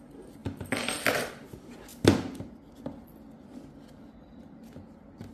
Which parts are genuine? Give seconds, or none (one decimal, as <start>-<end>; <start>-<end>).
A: 0.0-0.4; 1.3-5.3